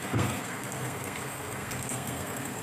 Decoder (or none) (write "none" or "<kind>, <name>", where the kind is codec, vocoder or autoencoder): codec, SNAC